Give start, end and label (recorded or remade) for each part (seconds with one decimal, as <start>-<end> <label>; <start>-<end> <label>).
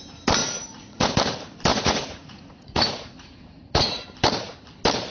0.0-0.4 recorded; 0.4-1.1 remade; 1.1-1.7 recorded; 1.7-4.0 remade; 4.0-5.1 recorded